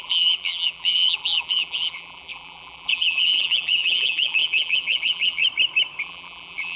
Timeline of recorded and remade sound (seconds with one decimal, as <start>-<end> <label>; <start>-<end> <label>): 0.0-5.4 remade; 5.4-6.0 recorded; 6.0-6.8 remade